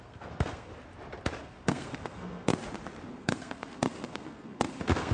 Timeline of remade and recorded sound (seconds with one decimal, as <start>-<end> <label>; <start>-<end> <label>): 0.0-0.7 remade; 0.7-1.4 recorded; 1.4-2.5 remade; 2.5-3.1 recorded; 3.1-5.1 remade